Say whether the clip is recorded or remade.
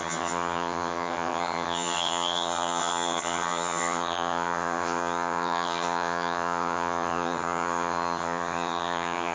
remade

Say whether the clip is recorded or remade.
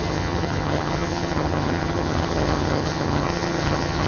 remade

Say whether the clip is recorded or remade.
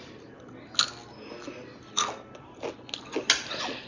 recorded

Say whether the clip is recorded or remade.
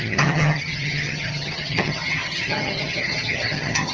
remade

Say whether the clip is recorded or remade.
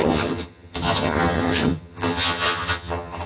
remade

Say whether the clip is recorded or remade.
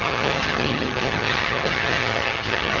remade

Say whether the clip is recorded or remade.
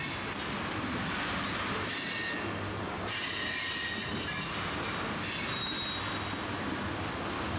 recorded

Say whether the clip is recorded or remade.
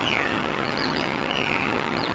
remade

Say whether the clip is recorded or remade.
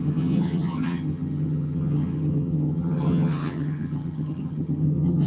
remade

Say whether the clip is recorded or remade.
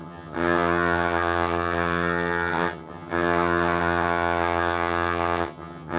remade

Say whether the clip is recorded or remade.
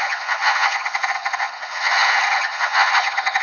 remade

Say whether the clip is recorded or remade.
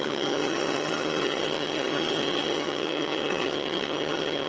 remade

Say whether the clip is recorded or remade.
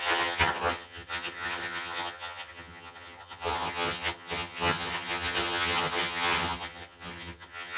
remade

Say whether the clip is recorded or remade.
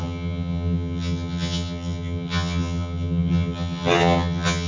remade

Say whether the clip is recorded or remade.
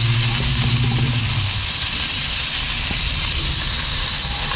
recorded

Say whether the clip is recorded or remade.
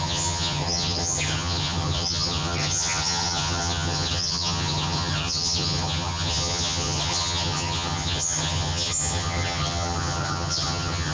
remade